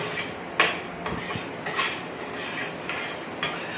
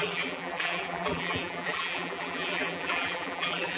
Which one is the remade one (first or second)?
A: second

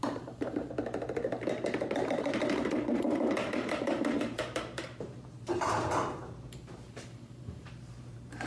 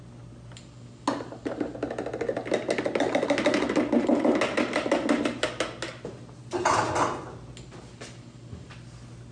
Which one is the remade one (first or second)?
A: first